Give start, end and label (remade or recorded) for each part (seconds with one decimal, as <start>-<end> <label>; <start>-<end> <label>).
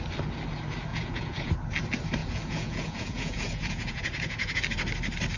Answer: 0.0-0.9 recorded; 0.9-1.5 remade; 1.5-2.2 recorded; 2.2-4.6 remade; 4.6-5.4 recorded